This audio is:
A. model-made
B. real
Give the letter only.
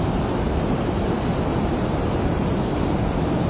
B